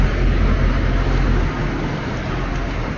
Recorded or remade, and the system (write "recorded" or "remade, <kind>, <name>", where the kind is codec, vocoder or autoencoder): recorded